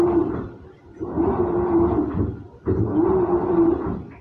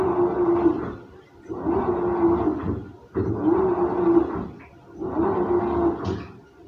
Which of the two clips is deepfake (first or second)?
first